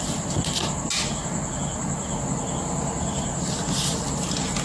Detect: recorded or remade recorded